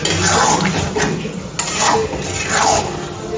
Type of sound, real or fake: real